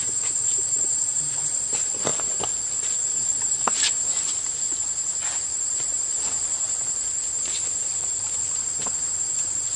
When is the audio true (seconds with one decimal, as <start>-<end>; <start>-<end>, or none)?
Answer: 2.1-3.1; 4.8-8.5